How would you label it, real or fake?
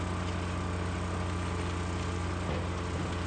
real